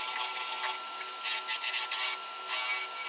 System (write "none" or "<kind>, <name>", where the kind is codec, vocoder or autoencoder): none